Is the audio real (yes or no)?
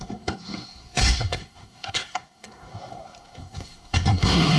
no